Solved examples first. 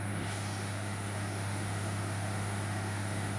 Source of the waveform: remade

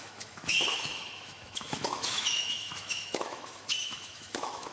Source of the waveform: remade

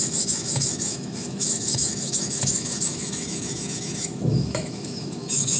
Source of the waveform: remade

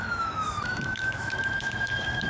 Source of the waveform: remade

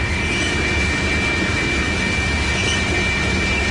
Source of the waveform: recorded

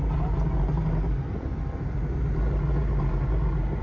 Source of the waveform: recorded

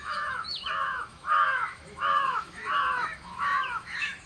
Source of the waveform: remade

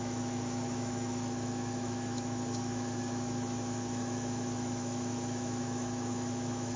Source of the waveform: remade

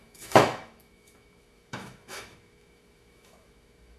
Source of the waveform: remade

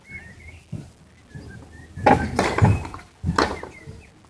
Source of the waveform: recorded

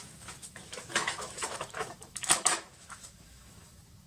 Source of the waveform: remade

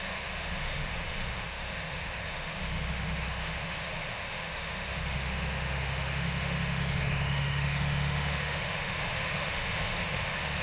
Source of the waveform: remade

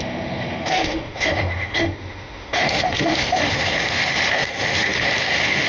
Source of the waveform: remade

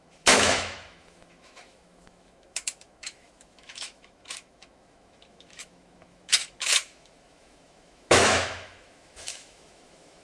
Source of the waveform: remade